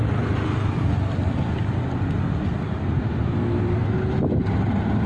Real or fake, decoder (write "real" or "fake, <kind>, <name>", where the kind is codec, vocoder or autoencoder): real